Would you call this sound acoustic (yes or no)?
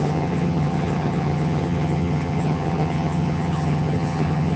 no